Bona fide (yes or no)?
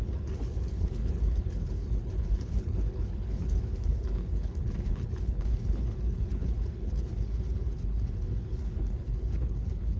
no